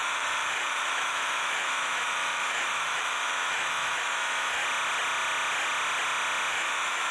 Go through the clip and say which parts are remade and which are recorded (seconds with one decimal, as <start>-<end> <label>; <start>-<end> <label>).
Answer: 0.0-4.6 remade; 4.6-6.5 recorded; 6.5-7.1 remade